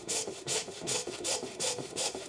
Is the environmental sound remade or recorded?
remade